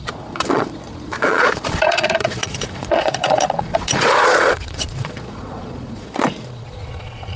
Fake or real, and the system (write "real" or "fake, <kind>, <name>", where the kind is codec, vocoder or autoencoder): fake, vocoder, Vocos